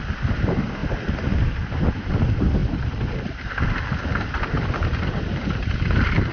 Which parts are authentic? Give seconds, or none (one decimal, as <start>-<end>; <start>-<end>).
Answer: 0.0-6.3